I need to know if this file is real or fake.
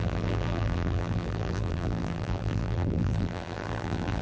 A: fake